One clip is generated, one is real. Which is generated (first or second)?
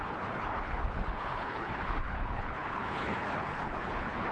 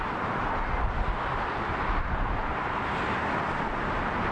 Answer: first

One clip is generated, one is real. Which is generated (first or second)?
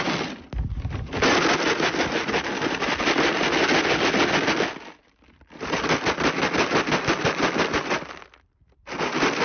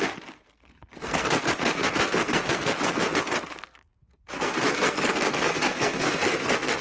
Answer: second